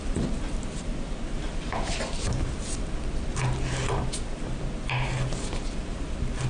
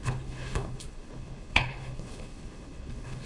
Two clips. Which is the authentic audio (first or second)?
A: first